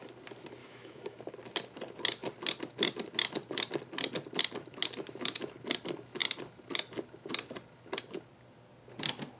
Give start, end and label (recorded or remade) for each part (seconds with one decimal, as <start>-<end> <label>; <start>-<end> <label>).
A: 0.0-0.6 recorded; 0.6-1.2 remade; 1.2-9.4 recorded